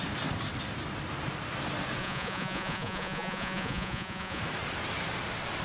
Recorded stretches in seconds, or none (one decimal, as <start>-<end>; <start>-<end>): 0.0-2.0; 4.4-5.6